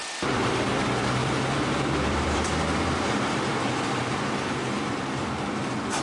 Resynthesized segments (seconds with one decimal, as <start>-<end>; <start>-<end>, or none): 1.2-3.5